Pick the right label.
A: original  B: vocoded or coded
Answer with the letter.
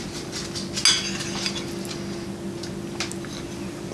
A